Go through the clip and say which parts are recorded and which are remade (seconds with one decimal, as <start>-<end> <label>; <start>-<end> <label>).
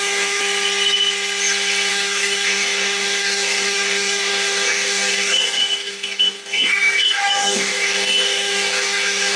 0.0-0.4 remade; 0.4-1.9 recorded; 1.9-9.4 remade